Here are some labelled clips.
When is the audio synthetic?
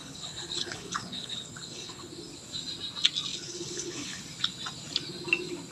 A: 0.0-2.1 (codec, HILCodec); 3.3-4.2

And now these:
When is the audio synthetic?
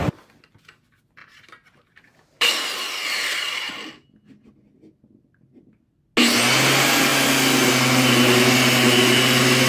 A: 1.2-3.7 (vocoder, BigVGAN v2)